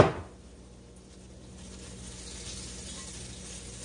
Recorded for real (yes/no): yes